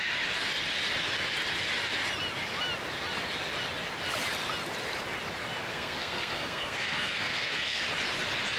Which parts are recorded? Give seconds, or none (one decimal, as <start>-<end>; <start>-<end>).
0.0-5.7; 7.8-8.6